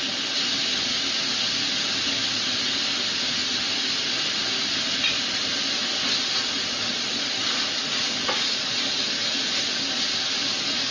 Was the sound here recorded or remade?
recorded